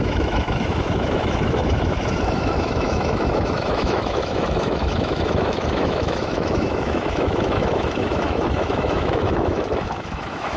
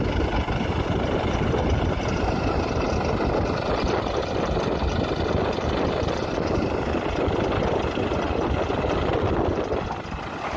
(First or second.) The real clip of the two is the second